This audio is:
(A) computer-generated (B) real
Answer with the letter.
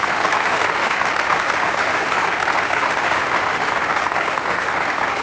A